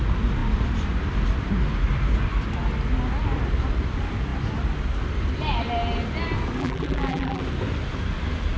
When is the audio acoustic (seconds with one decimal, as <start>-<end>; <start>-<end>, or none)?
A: 0.0-6.6; 7.4-8.6